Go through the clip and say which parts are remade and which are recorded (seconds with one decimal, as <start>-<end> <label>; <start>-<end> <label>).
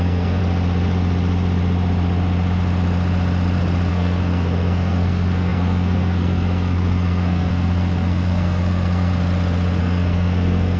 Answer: 0.0-0.4 remade; 0.4-3.9 recorded; 3.9-9.1 remade; 9.1-9.8 recorded; 9.8-10.8 remade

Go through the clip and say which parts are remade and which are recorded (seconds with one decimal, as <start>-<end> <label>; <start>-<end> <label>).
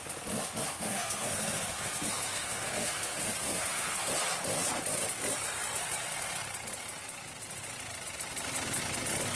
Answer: 0.0-0.7 recorded; 0.7-4.1 remade; 4.1-9.4 recorded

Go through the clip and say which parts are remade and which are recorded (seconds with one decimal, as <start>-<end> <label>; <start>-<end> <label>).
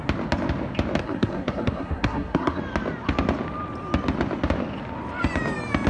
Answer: 0.0-1.0 recorded; 1.0-2.6 remade; 2.6-5.9 recorded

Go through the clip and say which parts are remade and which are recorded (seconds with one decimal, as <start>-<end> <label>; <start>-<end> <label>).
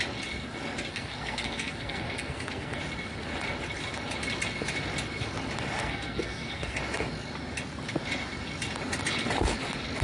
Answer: 0.0-0.9 recorded; 0.9-2.8 remade; 2.8-5.8 recorded; 5.8-6.8 remade; 6.8-10.0 recorded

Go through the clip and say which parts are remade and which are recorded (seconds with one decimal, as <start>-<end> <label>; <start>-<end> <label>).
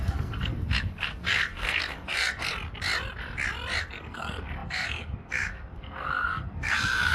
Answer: 0.0-2.5 remade; 2.5-3.8 recorded; 3.8-7.1 remade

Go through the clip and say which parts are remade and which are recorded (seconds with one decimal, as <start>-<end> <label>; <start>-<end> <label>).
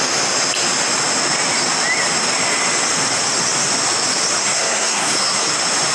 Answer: 0.0-4.4 recorded; 4.4-5.5 remade; 5.5-5.9 recorded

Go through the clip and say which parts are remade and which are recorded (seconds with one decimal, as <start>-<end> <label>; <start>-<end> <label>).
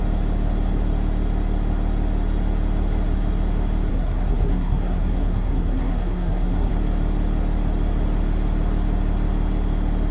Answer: 0.0-3.9 recorded; 3.9-6.7 remade; 6.7-10.1 recorded